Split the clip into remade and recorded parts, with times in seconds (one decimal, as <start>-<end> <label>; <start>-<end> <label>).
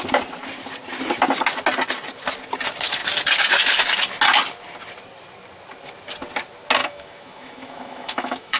0.0-6.8 recorded; 6.8-8.6 remade